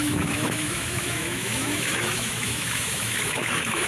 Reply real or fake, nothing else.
fake